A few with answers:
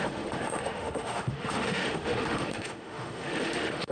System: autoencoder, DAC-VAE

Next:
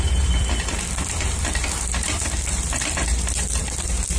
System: vocoder, BigVGAN v2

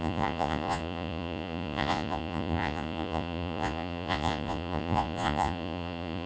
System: vocoder, Vocos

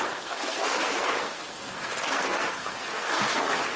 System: codec, SNAC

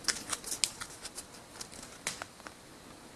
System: none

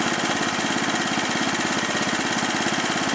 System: vocoder, BigVGAN v2